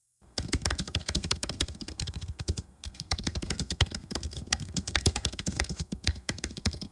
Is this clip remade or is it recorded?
remade